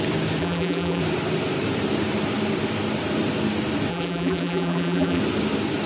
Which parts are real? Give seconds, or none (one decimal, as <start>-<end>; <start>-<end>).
0.0-0.4; 1.0-3.9; 5.2-5.9